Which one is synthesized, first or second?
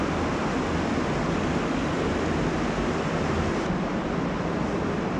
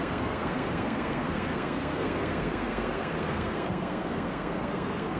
second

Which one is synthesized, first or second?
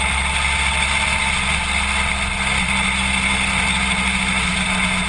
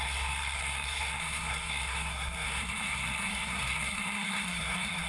second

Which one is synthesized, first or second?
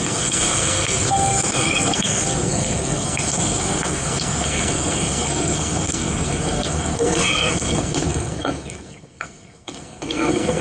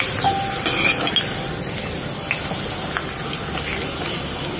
first